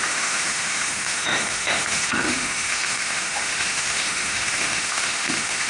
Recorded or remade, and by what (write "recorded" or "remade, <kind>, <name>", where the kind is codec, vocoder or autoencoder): remade, autoencoder, DAC-VAE